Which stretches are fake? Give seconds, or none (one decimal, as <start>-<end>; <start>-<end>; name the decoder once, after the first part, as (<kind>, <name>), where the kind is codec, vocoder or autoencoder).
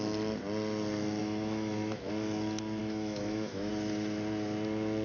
1.2-2.1 (autoencoder, DAC-VAE); 2.8-3.7